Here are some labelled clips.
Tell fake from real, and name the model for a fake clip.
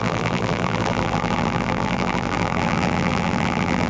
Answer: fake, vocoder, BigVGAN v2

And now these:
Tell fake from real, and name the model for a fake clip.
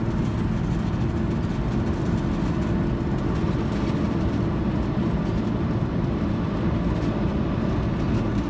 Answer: real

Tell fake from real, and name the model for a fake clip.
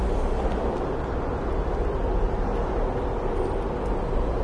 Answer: real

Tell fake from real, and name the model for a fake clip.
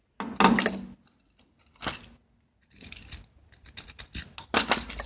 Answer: real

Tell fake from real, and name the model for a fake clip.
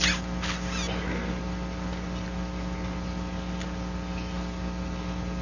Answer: real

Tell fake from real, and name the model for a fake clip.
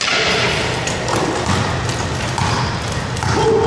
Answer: real